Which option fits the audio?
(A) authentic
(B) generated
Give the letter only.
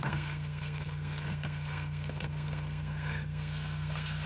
B